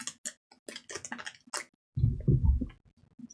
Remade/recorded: recorded